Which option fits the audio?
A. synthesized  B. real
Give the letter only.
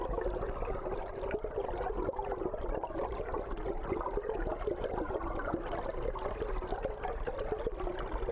B